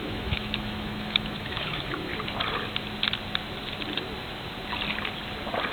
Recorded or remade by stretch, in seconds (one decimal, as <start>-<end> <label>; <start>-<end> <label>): 0.0-2.1 remade; 2.1-5.7 recorded